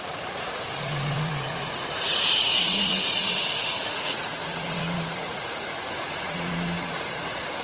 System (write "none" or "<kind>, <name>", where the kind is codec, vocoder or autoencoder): vocoder, Vocos